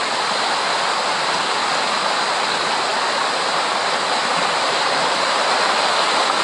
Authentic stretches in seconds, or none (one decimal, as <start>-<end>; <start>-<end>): 0.0-4.2; 5.5-6.4